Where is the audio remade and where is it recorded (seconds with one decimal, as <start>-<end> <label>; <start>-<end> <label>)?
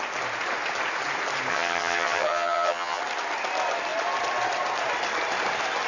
0.0-1.5 recorded; 1.5-3.0 remade; 3.0-5.9 recorded